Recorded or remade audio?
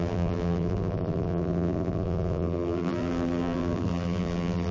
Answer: remade